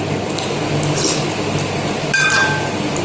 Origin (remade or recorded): recorded